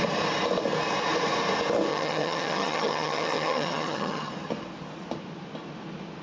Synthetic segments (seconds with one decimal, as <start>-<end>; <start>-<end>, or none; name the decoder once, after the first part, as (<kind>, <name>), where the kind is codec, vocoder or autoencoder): 1.9-4.3 (vocoder, HiFi-GAN)